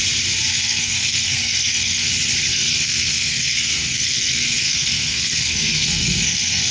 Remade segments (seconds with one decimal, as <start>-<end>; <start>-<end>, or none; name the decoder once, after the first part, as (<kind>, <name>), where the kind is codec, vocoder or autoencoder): 0.5-2.1 (codec, SNAC); 2.5-6.7